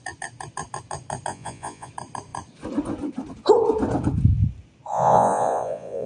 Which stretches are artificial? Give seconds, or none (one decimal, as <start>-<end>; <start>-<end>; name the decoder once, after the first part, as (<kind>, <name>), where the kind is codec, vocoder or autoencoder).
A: 1.3-1.9 (vocoder, Vocos); 4.9-6.1